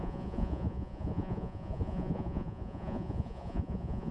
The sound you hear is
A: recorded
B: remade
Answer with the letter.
B